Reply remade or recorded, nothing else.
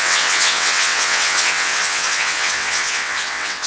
remade